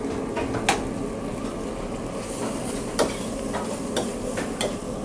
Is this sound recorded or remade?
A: recorded